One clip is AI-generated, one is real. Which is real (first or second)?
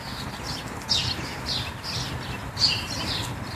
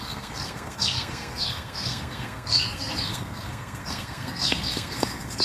first